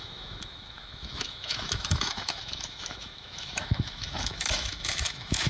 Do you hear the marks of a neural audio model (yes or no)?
yes